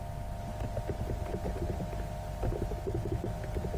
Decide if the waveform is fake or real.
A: real